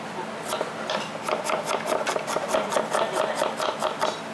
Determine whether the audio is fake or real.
real